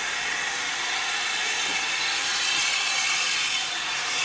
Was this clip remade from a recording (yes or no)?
no